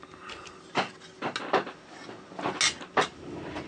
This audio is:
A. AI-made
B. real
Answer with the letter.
B